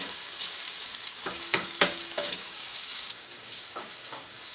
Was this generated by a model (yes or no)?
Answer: yes